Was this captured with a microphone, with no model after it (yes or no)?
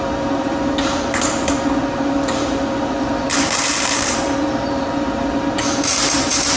no